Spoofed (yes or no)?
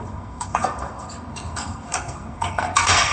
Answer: yes